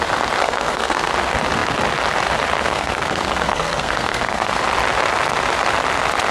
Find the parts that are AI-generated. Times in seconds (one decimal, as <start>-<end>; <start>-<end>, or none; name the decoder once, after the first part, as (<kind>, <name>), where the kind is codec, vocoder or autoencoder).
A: 0.4-1.1 (codec, SNAC); 2.6-4.6